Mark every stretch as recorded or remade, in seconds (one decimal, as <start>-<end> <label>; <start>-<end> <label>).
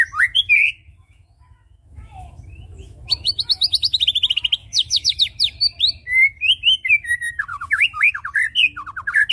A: 0.0-0.9 recorded; 0.9-4.0 remade; 4.0-4.6 recorded; 4.6-5.2 remade; 5.2-7.5 recorded; 7.5-8.1 remade; 8.1-9.3 recorded